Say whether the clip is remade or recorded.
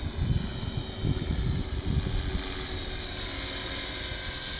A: recorded